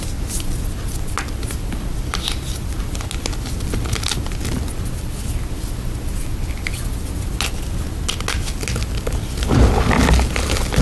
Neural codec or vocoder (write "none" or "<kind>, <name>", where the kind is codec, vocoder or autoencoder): none